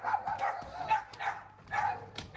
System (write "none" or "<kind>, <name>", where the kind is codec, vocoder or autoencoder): none